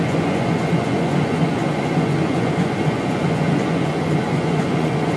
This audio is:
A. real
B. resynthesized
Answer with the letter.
B